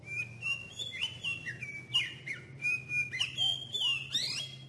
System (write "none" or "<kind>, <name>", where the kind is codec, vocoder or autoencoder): none